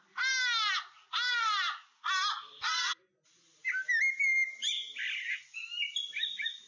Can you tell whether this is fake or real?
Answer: real